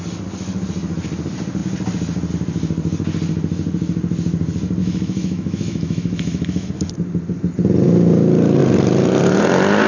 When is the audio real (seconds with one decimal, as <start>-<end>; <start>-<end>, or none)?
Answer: 0.0-4.8; 6.7-9.9